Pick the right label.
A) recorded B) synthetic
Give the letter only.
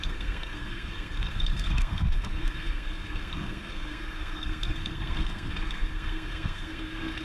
B